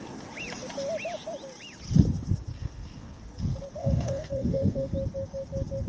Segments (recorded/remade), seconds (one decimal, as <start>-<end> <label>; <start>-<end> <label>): 0.0-2.5 recorded; 2.5-3.2 remade; 3.2-3.8 recorded; 3.8-4.9 remade; 4.9-5.9 recorded